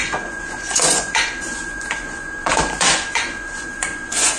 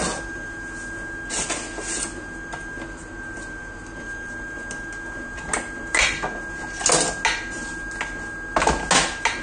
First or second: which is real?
second